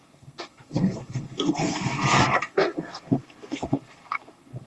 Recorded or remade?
remade